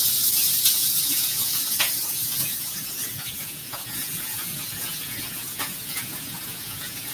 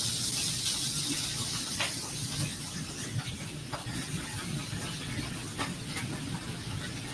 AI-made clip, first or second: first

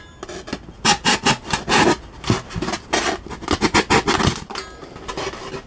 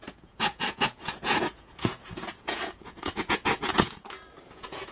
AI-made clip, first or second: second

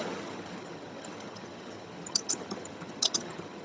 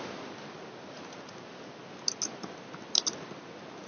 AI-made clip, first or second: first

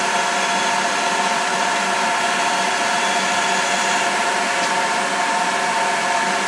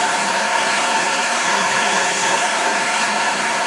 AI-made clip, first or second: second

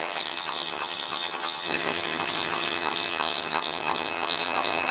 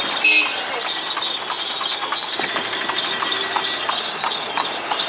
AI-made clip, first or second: first